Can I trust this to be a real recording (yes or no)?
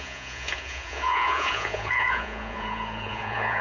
no